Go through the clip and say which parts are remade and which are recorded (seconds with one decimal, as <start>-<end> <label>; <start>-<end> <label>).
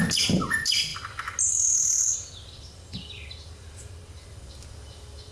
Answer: 0.0-5.3 recorded